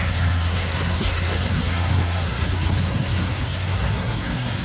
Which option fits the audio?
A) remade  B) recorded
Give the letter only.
A